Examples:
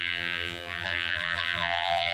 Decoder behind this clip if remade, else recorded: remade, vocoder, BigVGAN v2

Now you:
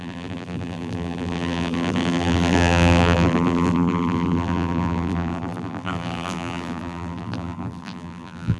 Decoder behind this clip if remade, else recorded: remade, vocoder, BigVGAN v2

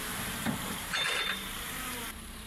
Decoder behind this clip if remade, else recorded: remade, vocoder, BigVGAN v2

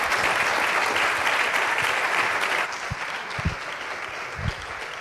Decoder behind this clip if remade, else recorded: recorded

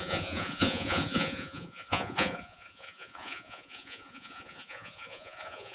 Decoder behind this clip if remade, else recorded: remade, vocoder, Vocos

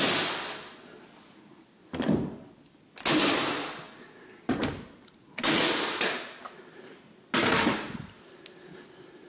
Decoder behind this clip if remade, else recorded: recorded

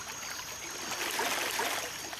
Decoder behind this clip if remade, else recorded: recorded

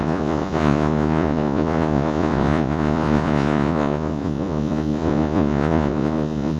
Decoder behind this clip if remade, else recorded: remade, vocoder, Vocos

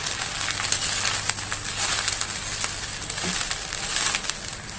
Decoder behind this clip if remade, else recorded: recorded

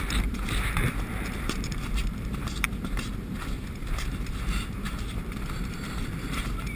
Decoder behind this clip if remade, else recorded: remade, vocoder, BigVGAN v2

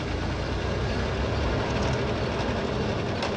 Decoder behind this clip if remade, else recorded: recorded